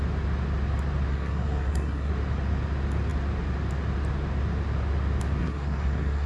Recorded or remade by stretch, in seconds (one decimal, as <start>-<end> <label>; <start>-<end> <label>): 0.0-1.1 recorded; 1.1-2.1 remade; 2.1-5.4 recorded; 5.4-6.3 remade